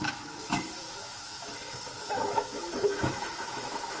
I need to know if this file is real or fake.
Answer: fake